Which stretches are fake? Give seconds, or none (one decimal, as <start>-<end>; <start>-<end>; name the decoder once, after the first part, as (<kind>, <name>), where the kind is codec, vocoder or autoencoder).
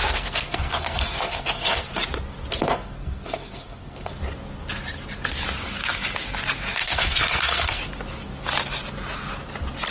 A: 0.0-1.9 (codec, SNAC); 2.5-4.2; 6.7-7.8